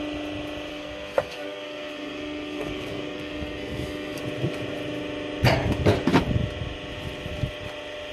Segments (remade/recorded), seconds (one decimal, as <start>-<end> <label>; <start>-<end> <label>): 0.0-0.7 recorded; 0.7-4.2 remade; 4.2-8.1 recorded